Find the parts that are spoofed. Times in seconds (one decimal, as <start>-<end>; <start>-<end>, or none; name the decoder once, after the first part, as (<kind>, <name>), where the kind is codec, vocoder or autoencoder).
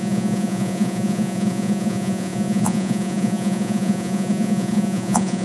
0.0-5.4 (vocoder, Vocos)